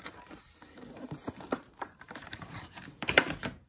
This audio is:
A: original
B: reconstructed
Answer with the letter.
B